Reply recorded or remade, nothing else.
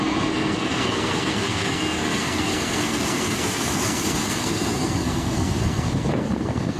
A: remade